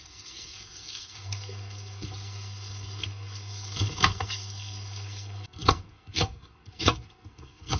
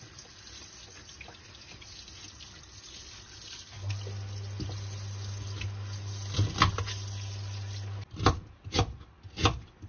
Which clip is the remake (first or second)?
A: first